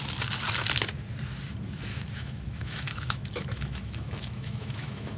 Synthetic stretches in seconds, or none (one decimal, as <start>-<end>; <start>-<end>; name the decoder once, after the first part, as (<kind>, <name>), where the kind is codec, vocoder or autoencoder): 1.9-5.2 (autoencoder, DAC-VAE)